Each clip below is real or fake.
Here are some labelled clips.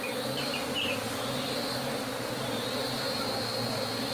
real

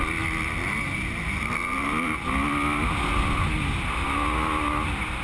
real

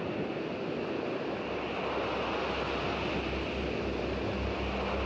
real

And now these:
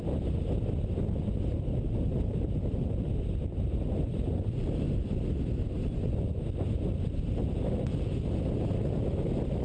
real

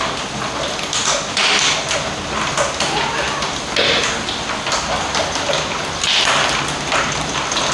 real